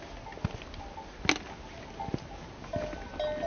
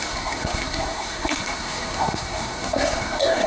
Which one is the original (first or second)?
first